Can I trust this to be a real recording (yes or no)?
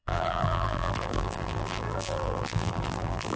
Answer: no